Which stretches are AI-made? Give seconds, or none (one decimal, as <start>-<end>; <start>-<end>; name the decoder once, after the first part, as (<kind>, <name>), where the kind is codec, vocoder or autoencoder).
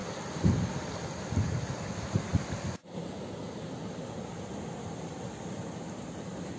none